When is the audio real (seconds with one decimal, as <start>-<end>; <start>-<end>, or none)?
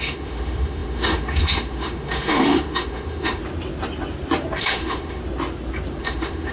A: 3.4-4.6; 5.2-6.0